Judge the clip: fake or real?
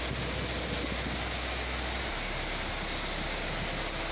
real